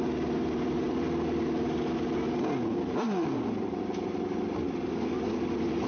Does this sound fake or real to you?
real